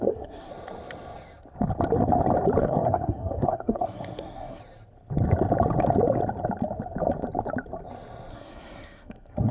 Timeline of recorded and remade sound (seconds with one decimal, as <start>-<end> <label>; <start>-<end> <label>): 0.0-0.5 remade; 0.5-2.6 recorded; 2.6-4.6 remade; 4.6-8.3 recorded; 8.3-9.5 remade